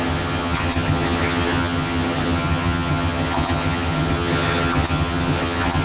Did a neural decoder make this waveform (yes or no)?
yes